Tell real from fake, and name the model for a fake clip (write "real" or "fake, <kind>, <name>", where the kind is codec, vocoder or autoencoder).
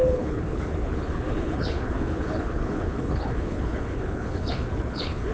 fake, codec, HILCodec